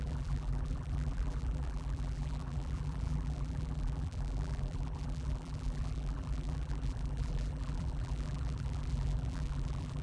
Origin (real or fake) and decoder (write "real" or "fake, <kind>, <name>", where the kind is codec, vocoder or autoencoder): fake, vocoder, BigVGAN v2